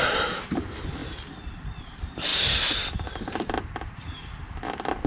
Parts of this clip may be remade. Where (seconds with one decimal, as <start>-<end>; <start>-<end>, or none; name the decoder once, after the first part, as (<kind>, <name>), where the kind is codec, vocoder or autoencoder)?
0.0-1.0 (vocoder, BigVGAN v2); 1.8-5.1